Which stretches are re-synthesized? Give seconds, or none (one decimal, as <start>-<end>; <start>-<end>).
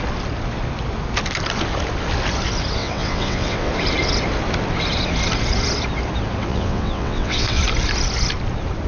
2.8-3.7; 6.4-7.6